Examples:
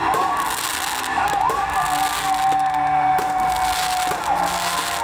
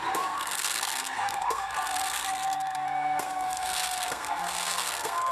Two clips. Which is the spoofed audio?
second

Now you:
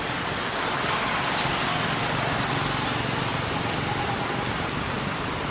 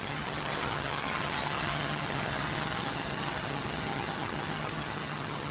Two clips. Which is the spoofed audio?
second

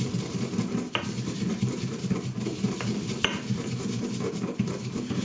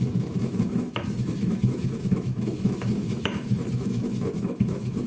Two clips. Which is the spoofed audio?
second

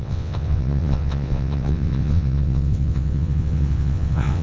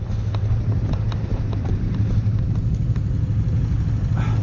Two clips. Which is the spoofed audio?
first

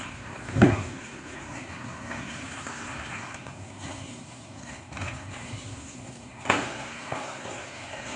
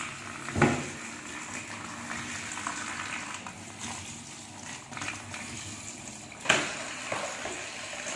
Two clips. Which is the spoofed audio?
first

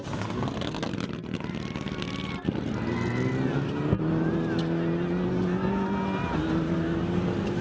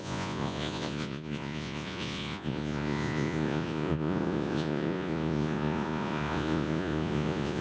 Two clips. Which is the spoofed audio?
second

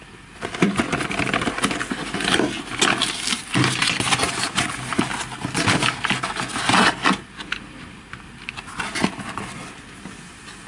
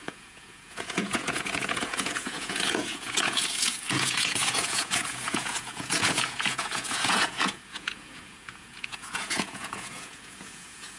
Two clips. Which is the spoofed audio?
second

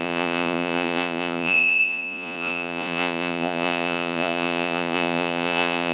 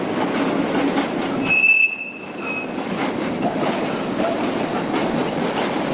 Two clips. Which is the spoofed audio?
first